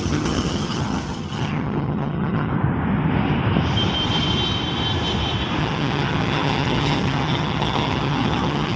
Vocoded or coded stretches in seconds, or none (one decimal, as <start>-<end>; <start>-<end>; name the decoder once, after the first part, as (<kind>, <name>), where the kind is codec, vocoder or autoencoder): 0.0-2.5 (vocoder, HiFi-GAN); 5.6-8.8